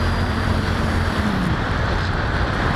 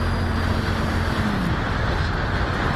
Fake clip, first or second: first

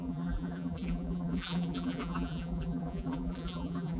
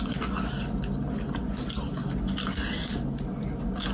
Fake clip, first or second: first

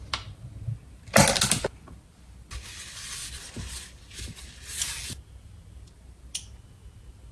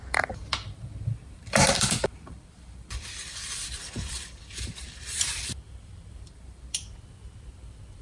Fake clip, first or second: second